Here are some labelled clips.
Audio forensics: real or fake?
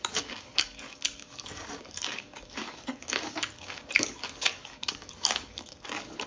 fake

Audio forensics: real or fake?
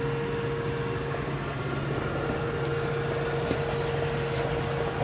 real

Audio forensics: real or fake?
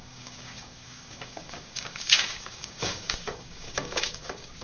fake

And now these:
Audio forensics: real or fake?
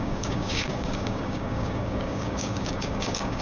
fake